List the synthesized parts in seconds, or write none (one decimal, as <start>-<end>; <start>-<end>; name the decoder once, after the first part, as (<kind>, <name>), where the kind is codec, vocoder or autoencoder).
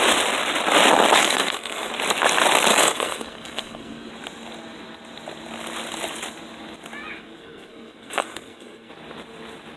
1.2-1.9 (codec, SNAC); 2.7-4.1; 7.2-8.9